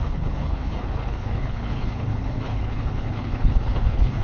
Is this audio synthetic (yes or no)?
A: yes